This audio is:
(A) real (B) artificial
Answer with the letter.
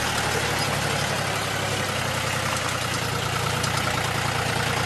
A